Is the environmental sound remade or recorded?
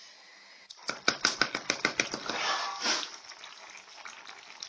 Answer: recorded